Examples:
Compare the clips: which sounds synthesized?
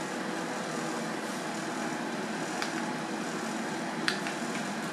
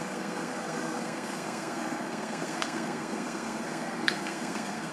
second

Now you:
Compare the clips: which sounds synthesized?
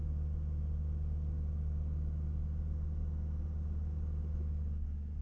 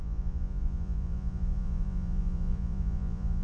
second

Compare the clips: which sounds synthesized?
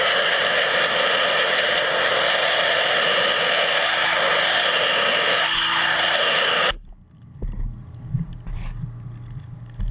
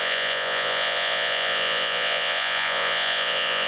second